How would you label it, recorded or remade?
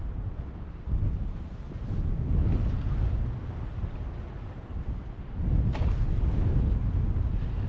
recorded